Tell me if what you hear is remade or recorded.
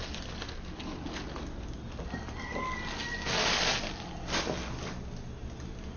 recorded